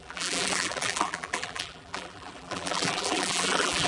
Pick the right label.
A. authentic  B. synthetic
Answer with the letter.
B